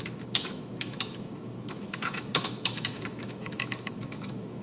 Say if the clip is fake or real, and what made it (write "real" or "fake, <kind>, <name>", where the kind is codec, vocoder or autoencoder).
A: fake, autoencoder, DAC-VAE